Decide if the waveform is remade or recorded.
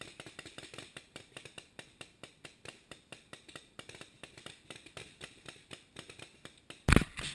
recorded